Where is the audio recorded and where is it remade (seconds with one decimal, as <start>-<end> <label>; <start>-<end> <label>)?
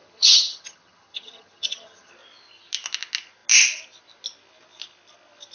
0.0-2.1 remade; 2.1-5.5 recorded